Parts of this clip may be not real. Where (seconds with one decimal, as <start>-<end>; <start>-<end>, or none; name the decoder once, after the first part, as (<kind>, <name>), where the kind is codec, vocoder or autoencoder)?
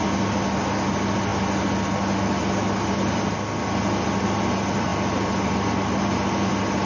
none